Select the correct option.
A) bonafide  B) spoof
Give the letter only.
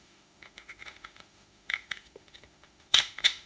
B